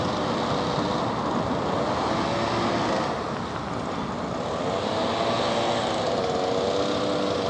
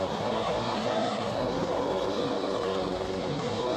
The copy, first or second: second